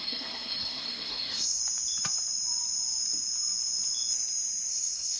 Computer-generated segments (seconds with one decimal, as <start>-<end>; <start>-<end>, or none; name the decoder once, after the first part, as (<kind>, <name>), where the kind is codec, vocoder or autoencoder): 0.0-1.6 (codec, SNAC); 4.7-5.2